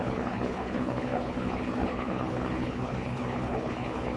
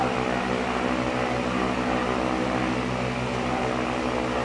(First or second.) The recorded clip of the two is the second